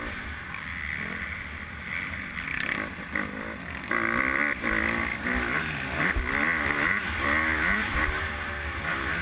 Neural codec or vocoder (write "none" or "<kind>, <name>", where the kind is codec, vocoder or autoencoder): none